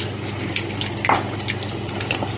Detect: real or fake real